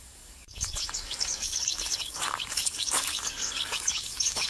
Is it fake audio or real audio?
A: fake